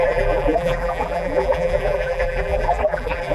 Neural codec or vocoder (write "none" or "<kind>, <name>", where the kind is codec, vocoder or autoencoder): vocoder, BigVGAN v2